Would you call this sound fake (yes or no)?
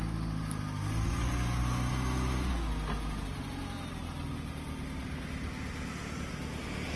no